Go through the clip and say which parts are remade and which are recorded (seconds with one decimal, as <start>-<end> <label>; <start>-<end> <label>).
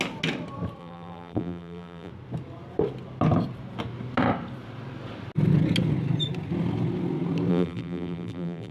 0.0-0.8 recorded; 0.8-2.1 remade; 2.1-7.5 recorded; 7.5-8.7 remade